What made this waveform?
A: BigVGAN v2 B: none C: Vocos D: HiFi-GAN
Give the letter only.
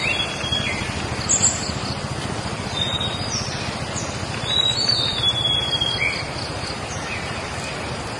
B